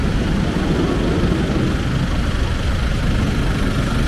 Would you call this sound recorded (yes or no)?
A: yes